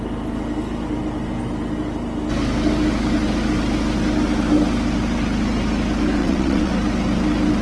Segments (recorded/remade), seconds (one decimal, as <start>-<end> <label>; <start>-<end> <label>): 0.0-6.2 recorded; 6.2-6.7 remade; 6.7-7.6 recorded